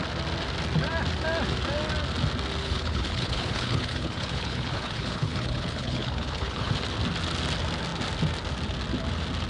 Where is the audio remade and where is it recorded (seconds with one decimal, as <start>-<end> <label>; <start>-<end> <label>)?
0.0-2.6 recorded; 2.6-6.7 remade; 6.7-9.5 recorded